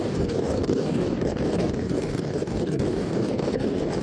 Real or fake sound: fake